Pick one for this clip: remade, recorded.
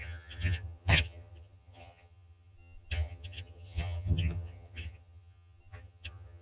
remade